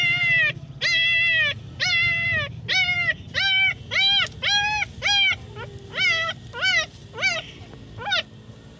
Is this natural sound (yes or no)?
yes